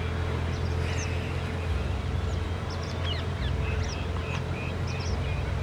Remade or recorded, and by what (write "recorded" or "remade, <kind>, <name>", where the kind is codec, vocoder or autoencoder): recorded